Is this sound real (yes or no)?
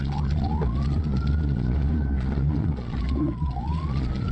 no